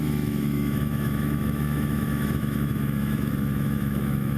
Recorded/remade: remade